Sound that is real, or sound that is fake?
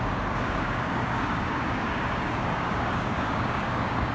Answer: fake